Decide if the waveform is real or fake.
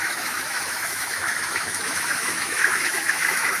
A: fake